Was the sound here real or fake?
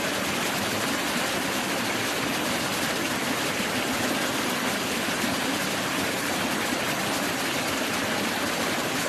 real